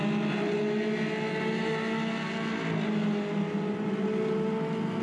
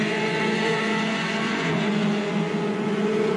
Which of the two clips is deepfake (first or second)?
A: second